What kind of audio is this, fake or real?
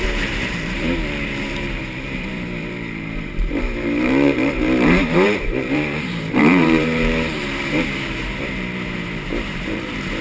fake